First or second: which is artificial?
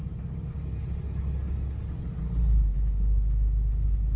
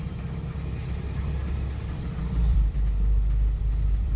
second